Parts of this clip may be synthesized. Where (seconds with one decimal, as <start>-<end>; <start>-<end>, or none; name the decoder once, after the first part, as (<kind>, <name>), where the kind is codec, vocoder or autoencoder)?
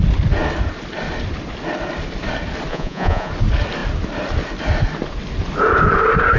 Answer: 2.7-3.3 (vocoder, Vocos)